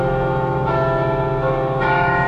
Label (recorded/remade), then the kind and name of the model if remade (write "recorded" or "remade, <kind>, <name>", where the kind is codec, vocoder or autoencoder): remade, autoencoder, DAC-VAE